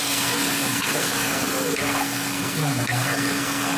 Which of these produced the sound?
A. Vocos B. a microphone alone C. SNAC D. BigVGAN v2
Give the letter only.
C